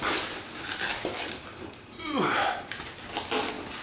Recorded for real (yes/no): yes